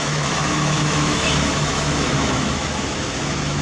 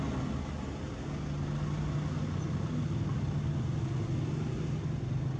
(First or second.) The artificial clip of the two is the first